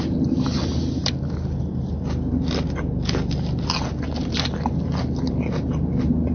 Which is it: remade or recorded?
recorded